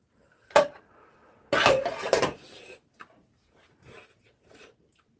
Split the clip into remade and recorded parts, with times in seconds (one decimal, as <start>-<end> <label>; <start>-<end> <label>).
0.0-1.2 remade; 1.2-1.7 recorded; 1.7-5.2 remade